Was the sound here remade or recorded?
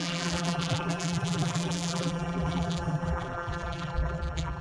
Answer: remade